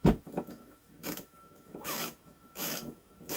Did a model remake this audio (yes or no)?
yes